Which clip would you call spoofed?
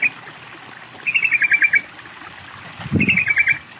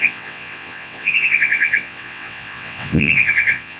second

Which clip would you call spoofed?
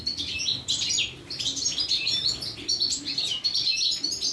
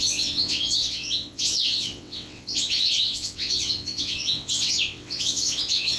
second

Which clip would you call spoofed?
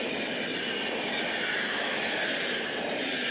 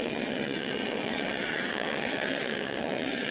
second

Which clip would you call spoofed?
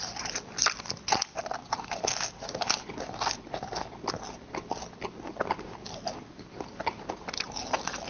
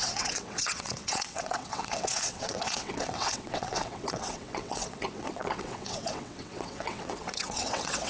second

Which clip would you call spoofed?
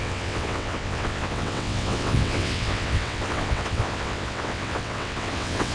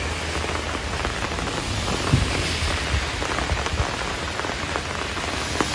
first